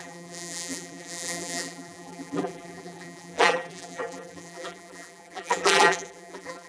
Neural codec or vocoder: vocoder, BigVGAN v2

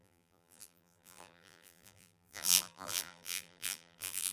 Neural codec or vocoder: vocoder, BigVGAN v2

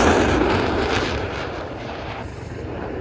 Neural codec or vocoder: vocoder, BigVGAN v2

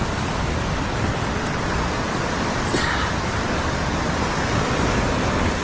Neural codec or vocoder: vocoder, BigVGAN v2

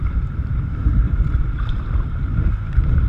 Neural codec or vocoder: vocoder, BigVGAN v2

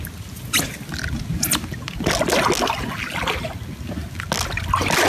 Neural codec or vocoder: none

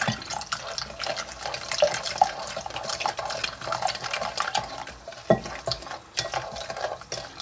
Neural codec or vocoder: none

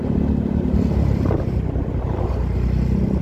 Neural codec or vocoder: none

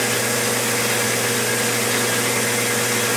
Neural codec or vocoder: none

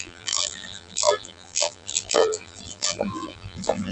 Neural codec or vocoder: vocoder, BigVGAN v2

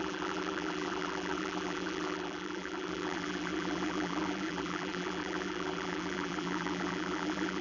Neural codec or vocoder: vocoder, BigVGAN v2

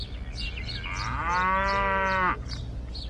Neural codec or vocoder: none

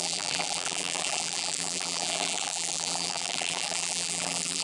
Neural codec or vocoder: vocoder, BigVGAN v2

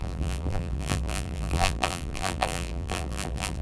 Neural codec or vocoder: vocoder, BigVGAN v2